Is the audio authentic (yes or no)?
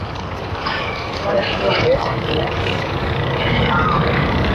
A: no